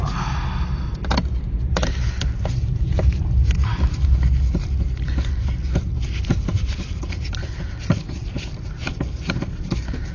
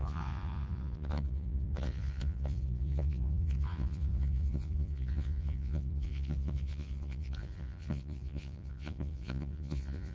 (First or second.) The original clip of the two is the first